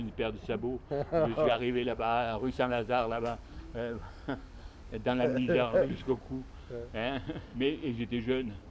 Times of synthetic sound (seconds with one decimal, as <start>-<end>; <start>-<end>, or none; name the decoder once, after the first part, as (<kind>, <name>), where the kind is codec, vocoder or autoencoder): 1.3-6.2 (codec, DAC)